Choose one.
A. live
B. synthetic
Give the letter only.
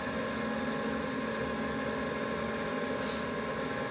A